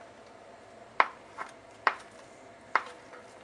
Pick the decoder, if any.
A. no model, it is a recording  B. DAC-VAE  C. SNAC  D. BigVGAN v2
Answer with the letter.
D